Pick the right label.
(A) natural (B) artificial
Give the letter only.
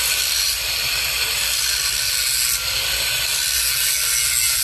A